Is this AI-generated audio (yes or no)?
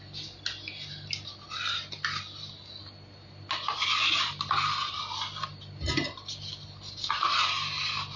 no